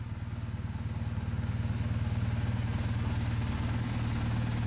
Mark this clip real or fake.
real